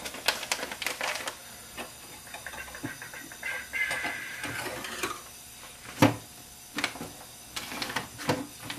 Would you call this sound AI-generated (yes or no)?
no